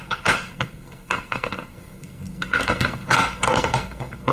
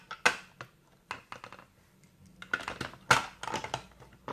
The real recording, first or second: second